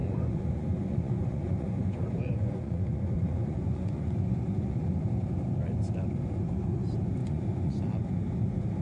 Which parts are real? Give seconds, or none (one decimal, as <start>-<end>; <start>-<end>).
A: 4.8-7.2; 7.8-8.8

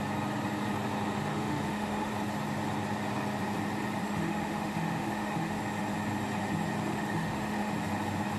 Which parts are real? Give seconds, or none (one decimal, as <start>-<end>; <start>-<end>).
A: 0.0-1.3; 2.1-4.0; 5.6-6.9; 7.7-8.4